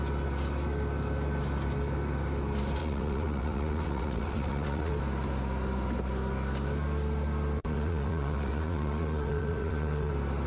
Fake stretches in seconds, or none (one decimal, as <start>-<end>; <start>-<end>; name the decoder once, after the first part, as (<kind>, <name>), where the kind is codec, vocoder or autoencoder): 2.8-4.9 (vocoder, WaveNeXt); 7.6-10.1